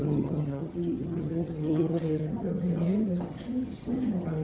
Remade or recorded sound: remade